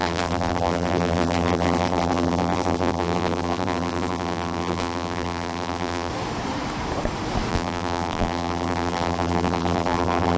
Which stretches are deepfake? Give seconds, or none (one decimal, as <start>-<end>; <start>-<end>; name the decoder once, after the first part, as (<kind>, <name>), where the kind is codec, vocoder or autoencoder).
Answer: 0.0-6.1 (vocoder, BigVGAN v2); 7.5-10.4